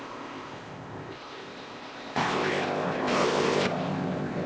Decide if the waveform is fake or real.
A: fake